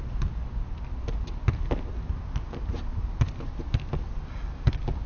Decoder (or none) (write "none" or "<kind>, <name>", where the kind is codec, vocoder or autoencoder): none